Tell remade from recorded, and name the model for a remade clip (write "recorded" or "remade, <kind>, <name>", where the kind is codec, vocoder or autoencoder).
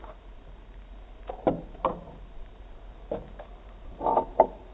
recorded